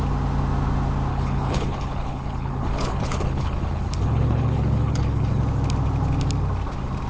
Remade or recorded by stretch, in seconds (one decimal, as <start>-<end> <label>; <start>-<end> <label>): 0.0-1.1 recorded; 1.1-5.4 remade; 5.4-7.1 recorded